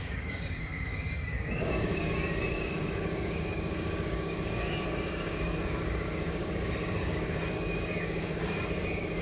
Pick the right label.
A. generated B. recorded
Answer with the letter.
A